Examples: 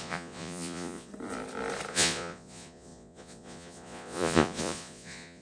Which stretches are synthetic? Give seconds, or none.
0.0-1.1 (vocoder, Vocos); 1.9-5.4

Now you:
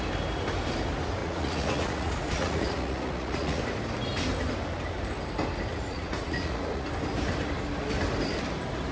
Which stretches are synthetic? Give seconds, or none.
1.2-3.6 (vocoder, Vocos); 5.7-6.9

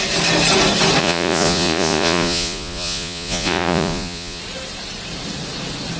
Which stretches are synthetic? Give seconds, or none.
1.0-4.4 (vocoder, Vocos)

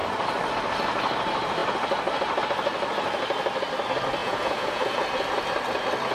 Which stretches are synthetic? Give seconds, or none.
4.2-5.0 (vocoder, Vocos)

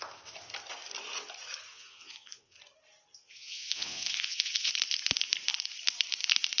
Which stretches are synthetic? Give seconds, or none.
1.7-2.6 (vocoder, Vocos); 3.2-4.7

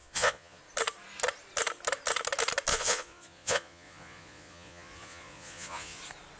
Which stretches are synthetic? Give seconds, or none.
0.0-0.6 (vocoder, Vocos); 2.7-6.0